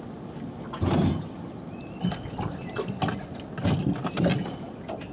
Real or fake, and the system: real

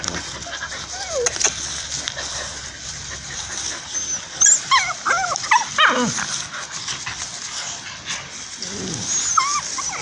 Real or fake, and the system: real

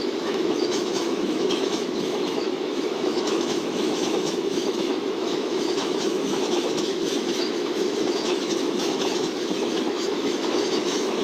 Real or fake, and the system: fake, autoencoder, DAC-VAE